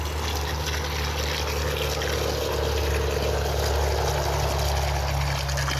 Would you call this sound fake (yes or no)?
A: no